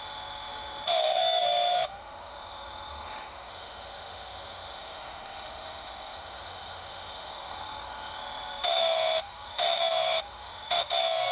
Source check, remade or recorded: remade